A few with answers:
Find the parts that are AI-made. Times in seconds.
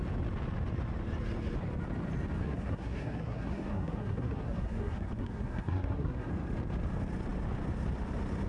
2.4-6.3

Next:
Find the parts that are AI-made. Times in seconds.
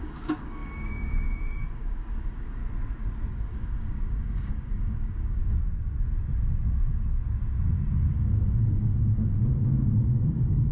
0.0-2.6; 3.3-5.4; 8.1-10.7